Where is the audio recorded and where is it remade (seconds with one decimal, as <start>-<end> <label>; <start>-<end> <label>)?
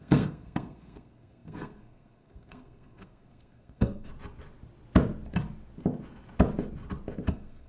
0.0-4.1 remade; 4.1-7.3 recorded; 7.3-7.7 remade